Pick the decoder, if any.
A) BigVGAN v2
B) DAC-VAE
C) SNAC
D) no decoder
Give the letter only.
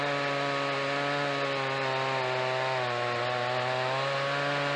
D